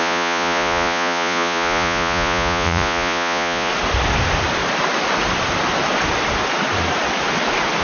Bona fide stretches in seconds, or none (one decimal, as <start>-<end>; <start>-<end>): 3.7-7.8